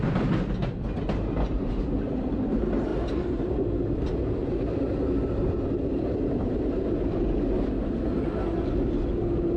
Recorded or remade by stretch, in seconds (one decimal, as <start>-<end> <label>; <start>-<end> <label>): 0.0-9.6 recorded